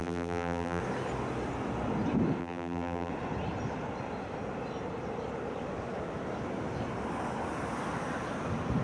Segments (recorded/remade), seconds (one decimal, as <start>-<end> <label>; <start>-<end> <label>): 0.0-0.8 remade; 0.8-2.4 recorded; 2.4-3.1 remade; 3.1-8.8 recorded